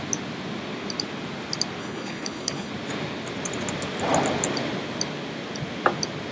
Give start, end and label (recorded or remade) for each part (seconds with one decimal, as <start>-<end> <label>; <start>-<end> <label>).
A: 0.0-1.8 recorded; 1.8-2.7 remade; 2.7-6.3 recorded